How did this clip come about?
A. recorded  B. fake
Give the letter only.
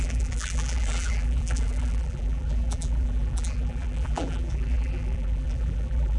B